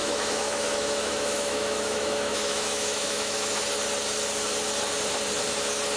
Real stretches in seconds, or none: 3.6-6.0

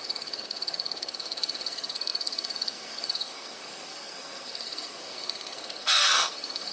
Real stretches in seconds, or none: none

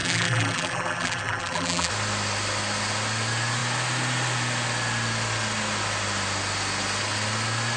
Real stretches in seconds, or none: 1.9-7.8

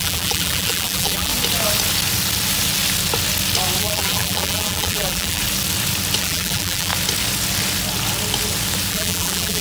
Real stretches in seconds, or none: 1.3-3.8; 5.4-6.2; 6.9-8.9

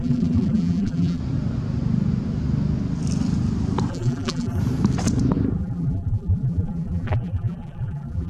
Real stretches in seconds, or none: 1.2-3.9; 4.6-5.6

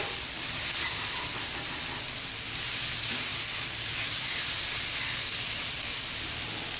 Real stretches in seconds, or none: 0.0-6.8